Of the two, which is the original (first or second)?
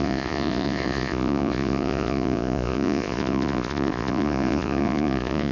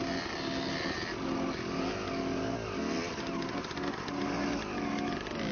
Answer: second